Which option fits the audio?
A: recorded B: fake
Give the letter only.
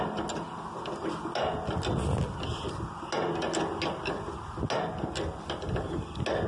A